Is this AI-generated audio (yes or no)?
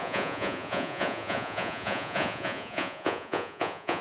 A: yes